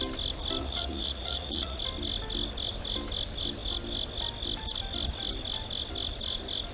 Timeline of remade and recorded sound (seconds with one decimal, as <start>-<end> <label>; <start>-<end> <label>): 0.0-0.6 recorded; 0.6-1.8 remade; 1.8-6.7 recorded